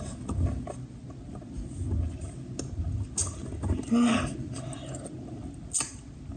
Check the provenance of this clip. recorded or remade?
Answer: recorded